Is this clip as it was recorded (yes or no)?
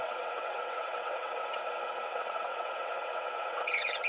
no